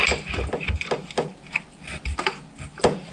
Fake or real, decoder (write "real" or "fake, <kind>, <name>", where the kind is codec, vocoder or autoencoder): real